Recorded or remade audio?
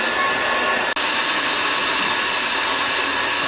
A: recorded